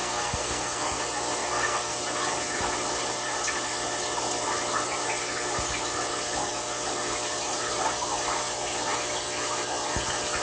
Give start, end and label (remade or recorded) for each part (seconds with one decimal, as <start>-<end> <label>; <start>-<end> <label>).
0.0-1.0 remade; 1.0-1.4 recorded; 1.4-2.0 remade; 2.0-10.4 recorded